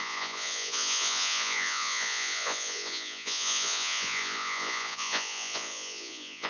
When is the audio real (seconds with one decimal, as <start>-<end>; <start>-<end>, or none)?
none